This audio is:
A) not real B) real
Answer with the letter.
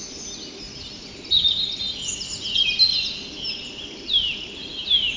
B